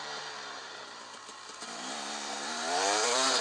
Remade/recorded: remade